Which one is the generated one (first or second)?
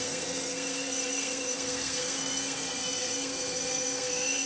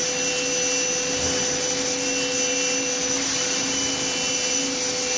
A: first